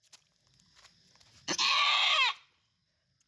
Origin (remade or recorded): recorded